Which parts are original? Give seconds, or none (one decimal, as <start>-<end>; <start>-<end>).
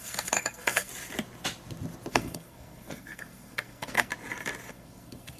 0.9-2.1; 4.1-4.7